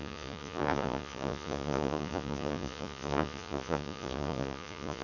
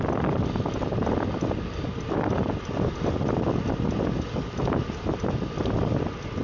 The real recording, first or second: second